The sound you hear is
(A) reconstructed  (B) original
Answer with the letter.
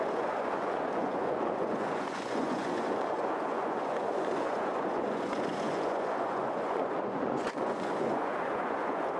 A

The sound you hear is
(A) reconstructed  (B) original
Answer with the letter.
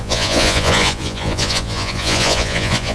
A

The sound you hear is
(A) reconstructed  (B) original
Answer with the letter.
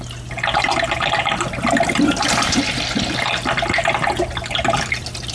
B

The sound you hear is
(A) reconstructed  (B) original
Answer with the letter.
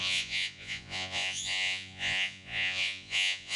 A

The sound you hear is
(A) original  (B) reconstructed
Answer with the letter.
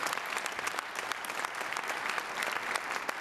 A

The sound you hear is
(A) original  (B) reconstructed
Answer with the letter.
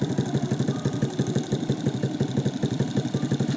A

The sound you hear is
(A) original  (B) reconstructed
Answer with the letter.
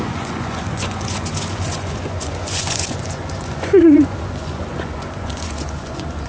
B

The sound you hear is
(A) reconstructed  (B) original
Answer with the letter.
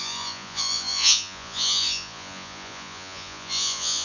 A